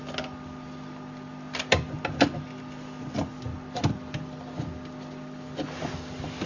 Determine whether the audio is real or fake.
real